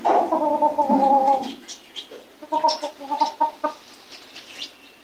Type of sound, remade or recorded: recorded